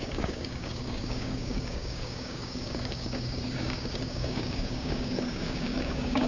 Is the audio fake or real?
fake